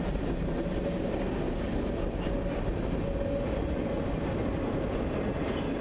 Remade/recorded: recorded